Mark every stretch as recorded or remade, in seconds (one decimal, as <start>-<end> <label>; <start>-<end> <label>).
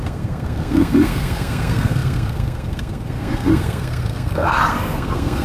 0.0-5.4 remade